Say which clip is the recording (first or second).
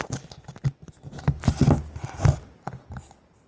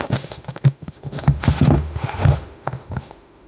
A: first